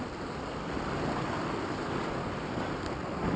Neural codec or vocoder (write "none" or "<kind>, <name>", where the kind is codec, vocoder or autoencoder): none